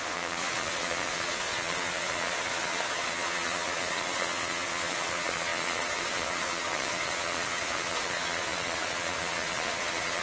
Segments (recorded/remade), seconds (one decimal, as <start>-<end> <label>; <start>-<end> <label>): 0.0-10.2 remade